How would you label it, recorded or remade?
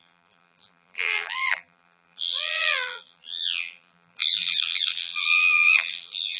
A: remade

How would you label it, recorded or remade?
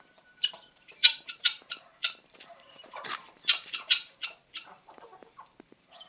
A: remade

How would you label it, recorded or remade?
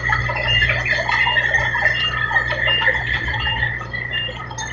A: recorded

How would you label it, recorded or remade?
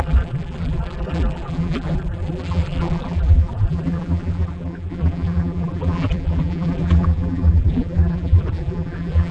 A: remade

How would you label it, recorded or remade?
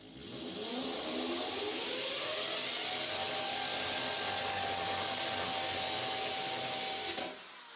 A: recorded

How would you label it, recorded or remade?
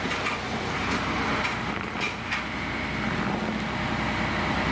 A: recorded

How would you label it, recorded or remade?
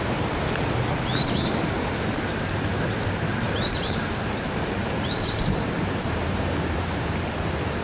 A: remade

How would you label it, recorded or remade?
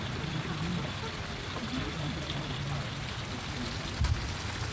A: recorded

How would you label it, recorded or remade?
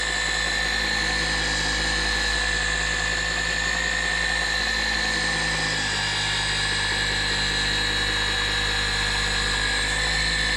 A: recorded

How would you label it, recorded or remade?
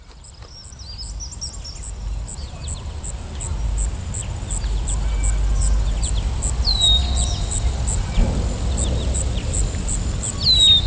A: recorded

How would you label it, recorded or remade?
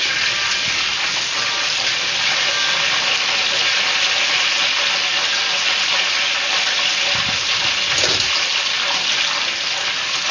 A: recorded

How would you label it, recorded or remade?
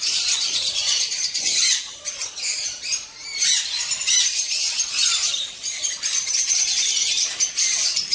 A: remade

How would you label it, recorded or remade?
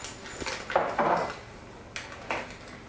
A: recorded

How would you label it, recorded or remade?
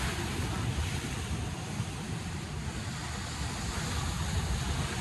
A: recorded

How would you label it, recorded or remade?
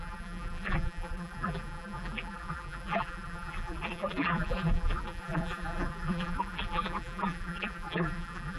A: remade